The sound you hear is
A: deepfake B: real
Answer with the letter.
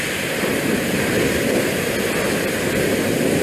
B